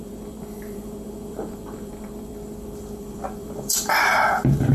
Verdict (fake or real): fake